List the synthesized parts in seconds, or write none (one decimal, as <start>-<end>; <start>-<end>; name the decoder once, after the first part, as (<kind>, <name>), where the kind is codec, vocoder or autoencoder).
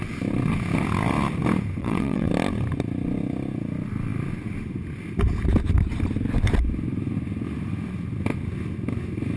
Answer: 1.8-2.3 (vocoder, WaveNeXt)